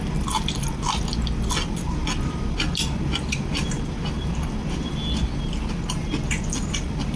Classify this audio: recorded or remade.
recorded